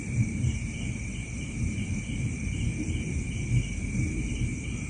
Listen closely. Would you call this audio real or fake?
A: fake